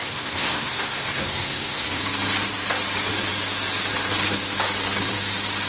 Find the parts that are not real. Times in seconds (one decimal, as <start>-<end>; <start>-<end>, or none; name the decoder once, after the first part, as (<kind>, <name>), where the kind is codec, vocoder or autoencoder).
0.0-2.0 (codec, SNAC)